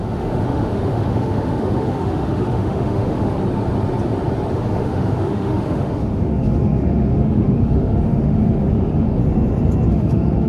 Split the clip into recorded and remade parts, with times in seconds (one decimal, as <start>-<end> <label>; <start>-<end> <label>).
0.0-3.4 remade; 3.4-4.5 recorded; 4.5-9.2 remade; 9.2-9.9 recorded; 9.9-10.5 remade